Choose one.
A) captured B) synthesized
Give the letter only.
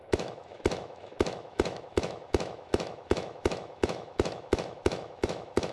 B